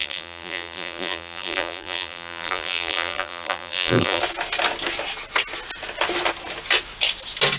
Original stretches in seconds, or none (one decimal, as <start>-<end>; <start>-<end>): 4.2-7.6